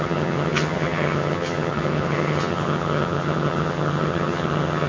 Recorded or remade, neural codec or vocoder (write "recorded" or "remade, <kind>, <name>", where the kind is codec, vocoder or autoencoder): remade, vocoder, HiFi-GAN